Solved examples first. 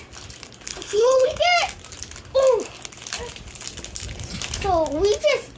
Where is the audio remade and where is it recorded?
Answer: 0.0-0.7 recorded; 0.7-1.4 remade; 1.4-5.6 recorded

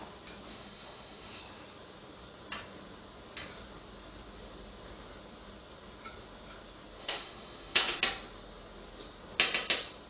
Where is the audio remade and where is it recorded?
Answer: 0.0-0.5 recorded; 0.5-1.4 remade; 1.4-7.0 recorded; 7.0-8.0 remade; 8.0-10.1 recorded

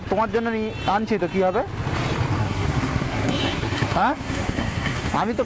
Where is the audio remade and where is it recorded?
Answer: 0.0-2.4 recorded; 2.4-5.1 remade; 5.1-5.5 recorded

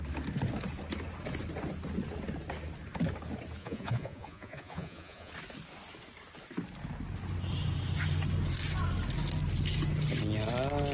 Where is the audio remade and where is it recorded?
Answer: 0.0-3.6 recorded; 3.6-5.3 remade; 5.3-10.9 recorded

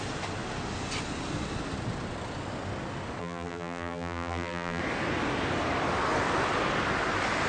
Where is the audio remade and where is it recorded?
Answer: 0.0-3.2 recorded; 3.2-4.8 remade; 4.8-7.5 recorded